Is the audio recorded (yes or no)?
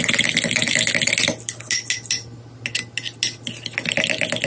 yes